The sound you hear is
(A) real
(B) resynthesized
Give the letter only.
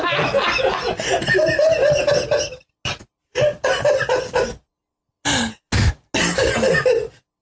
A